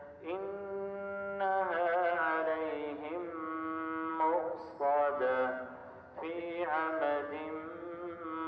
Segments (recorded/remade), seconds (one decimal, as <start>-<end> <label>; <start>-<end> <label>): 0.0-8.5 recorded